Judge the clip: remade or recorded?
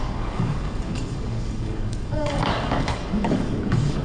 remade